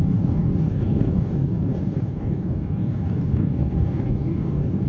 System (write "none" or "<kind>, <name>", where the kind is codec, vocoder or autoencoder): codec, DAC